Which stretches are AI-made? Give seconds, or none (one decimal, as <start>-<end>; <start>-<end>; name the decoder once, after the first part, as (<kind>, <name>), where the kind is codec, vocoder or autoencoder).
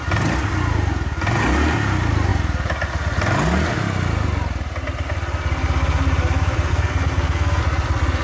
6.7-7.6 (codec, SNAC)